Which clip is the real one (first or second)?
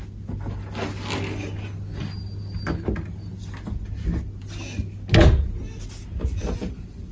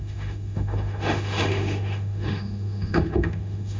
first